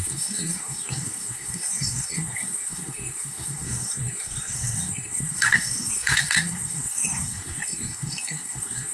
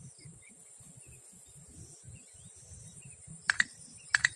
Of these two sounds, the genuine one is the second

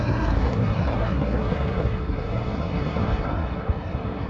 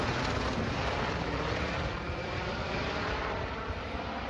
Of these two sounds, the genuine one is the second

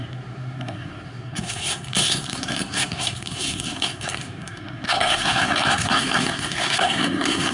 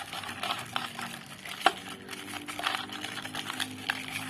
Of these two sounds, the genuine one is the second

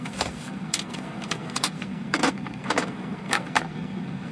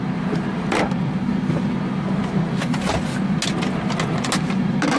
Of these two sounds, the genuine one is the second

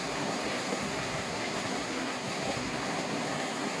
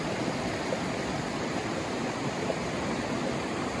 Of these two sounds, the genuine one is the second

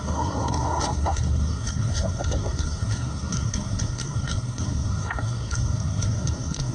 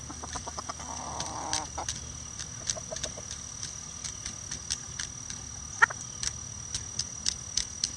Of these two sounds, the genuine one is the second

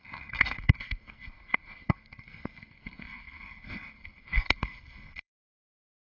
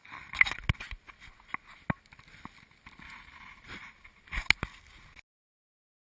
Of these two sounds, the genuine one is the second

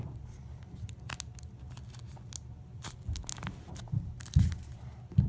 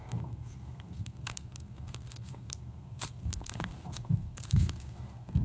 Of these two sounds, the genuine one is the first